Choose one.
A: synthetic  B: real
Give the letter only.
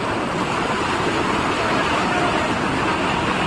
B